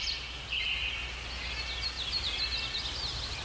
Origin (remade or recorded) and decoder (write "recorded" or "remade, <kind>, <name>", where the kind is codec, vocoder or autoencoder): recorded